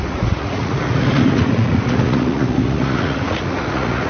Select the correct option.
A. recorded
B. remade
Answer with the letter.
B